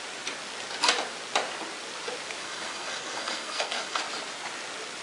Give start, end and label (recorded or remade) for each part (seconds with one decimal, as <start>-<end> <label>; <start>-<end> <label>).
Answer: 0.0-2.4 recorded; 2.4-4.0 remade; 4.0-5.0 recorded